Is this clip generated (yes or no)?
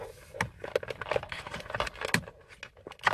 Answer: no